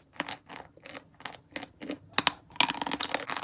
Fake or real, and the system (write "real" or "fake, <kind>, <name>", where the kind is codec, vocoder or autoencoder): real